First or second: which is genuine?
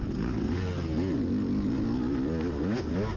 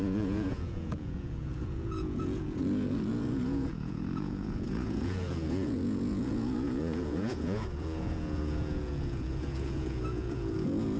first